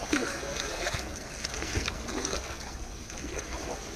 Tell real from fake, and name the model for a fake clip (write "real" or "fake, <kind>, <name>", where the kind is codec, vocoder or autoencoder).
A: fake, codec, SNAC